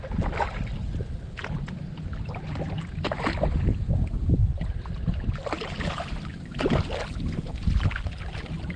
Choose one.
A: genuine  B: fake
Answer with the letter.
A